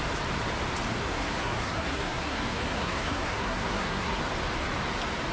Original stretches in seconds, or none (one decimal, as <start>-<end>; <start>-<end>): 0.0-1.0; 4.2-5.3